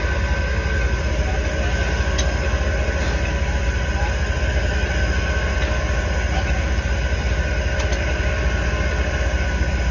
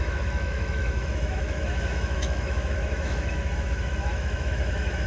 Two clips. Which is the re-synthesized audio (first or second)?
second